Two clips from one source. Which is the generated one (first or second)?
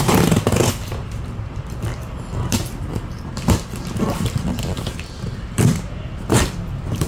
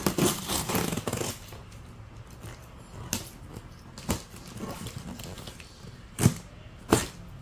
first